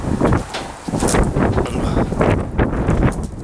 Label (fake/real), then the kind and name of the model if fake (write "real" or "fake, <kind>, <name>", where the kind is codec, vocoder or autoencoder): real